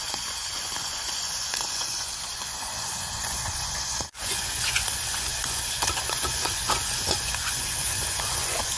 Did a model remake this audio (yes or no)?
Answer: yes